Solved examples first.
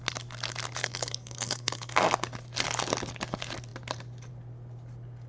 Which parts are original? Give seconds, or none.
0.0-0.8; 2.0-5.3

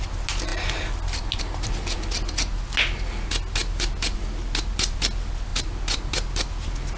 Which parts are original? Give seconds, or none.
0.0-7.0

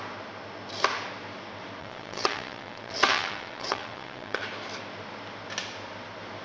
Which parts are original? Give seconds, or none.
0.0-1.8; 4.4-6.4

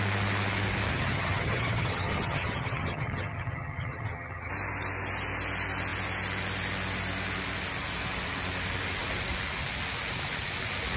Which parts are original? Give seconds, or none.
0.0-0.9; 4.5-11.0

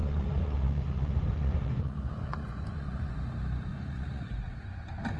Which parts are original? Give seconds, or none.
3.1-3.7; 4.7-5.2